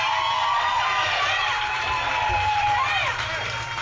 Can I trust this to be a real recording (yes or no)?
no